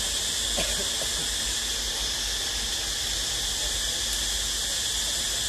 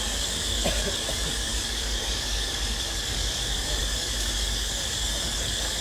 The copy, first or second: second